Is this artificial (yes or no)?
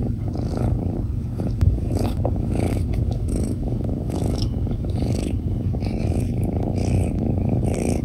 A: yes